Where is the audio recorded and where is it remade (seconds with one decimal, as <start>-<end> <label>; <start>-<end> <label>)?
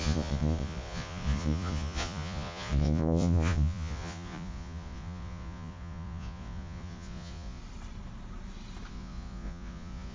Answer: 0.0-7.6 remade; 7.6-8.9 recorded; 8.9-10.1 remade